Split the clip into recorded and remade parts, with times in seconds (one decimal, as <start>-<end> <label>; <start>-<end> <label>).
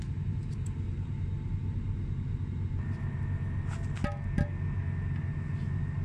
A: 0.0-6.0 recorded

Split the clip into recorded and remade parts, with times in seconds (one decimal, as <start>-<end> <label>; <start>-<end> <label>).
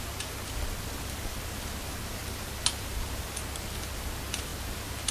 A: 0.0-5.1 recorded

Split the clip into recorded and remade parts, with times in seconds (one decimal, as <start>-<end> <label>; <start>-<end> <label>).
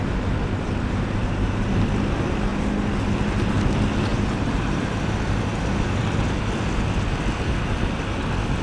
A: 0.0-1.2 recorded; 1.2-1.7 remade; 1.7-4.1 recorded; 4.1-5.0 remade; 5.0-8.6 recorded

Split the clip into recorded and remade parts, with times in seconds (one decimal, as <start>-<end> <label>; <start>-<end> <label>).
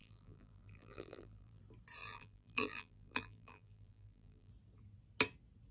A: 0.0-1.6 remade; 1.6-2.0 recorded; 2.0-4.5 remade; 4.5-5.7 recorded